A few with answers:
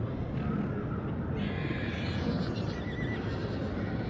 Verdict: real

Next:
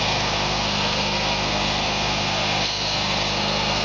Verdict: fake